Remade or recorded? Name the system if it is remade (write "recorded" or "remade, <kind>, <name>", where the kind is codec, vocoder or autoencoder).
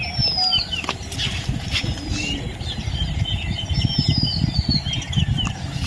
recorded